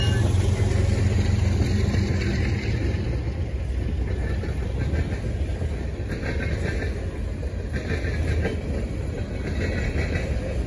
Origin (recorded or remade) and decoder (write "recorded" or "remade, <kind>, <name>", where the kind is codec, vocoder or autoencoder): recorded